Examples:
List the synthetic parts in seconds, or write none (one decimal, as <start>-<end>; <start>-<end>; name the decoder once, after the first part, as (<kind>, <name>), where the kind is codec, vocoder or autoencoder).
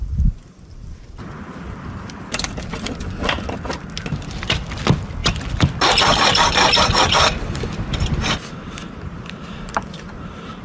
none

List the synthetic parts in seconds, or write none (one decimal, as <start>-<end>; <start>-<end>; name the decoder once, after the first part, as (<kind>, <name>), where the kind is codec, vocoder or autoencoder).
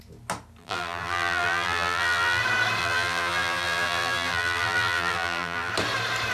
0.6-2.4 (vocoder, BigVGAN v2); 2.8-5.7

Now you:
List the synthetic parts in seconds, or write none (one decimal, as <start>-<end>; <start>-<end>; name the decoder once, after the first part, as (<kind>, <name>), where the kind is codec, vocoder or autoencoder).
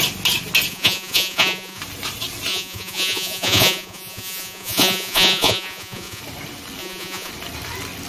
0.7-1.8 (vocoder, Vocos); 2.5-6.2; 6.8-7.3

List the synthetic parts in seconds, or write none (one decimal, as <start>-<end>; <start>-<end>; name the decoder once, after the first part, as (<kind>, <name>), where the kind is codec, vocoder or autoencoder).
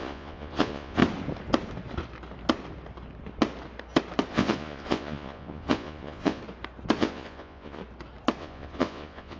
0.0-1.0 (vocoder, Vocos); 4.3-6.4; 7.0-7.8; 8.4-9.4